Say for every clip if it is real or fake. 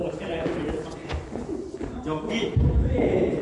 real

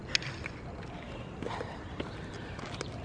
real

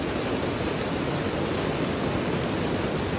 real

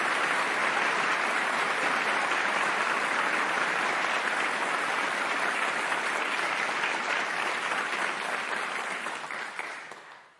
real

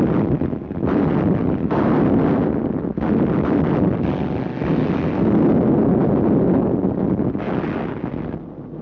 real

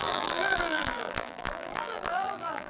fake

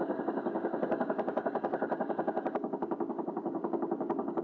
fake